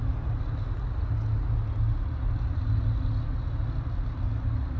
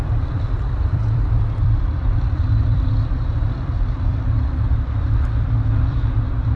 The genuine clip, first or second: first